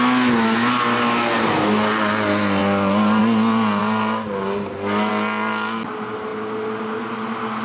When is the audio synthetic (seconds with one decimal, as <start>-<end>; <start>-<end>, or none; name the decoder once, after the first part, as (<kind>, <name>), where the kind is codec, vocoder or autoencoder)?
none